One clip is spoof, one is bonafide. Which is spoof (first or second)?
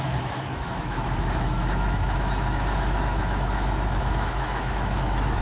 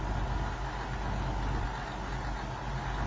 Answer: first